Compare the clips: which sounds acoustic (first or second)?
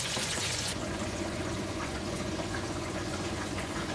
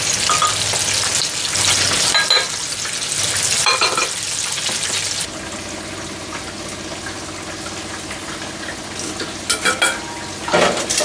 second